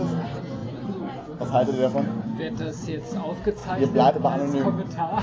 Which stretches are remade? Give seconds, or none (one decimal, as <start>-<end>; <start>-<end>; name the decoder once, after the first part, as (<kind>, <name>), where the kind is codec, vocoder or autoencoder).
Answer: none